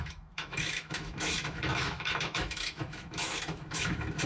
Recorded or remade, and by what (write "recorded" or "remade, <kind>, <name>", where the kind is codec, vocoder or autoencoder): remade, autoencoder, DAC-VAE